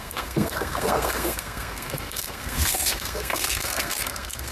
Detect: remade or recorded remade